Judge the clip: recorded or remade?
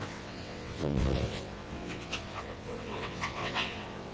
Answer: remade